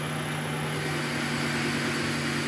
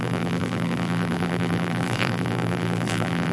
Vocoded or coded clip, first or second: second